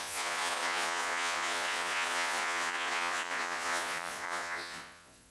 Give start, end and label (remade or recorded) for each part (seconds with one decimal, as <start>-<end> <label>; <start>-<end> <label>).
0.0-5.3 remade